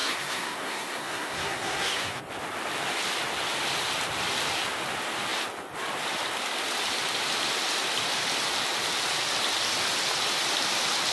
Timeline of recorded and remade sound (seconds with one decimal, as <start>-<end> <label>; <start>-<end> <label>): 0.0-2.2 remade; 2.2-11.1 recorded